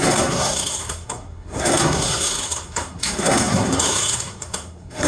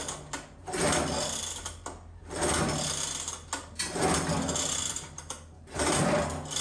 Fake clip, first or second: first